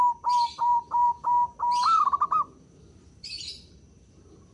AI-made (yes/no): yes